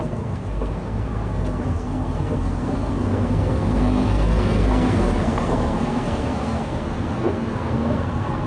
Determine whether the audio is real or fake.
fake